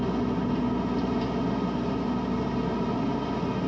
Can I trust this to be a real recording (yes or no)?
yes